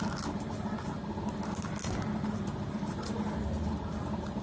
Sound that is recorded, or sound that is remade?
recorded